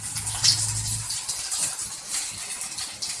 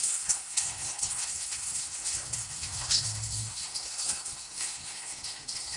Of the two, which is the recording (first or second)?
first